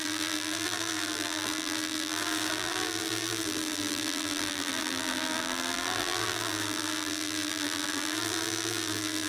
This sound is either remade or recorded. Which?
remade